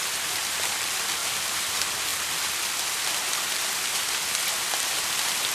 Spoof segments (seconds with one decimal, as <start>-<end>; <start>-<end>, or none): 1.2-1.7; 2.1-3.4